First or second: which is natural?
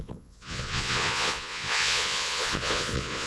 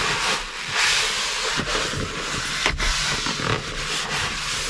second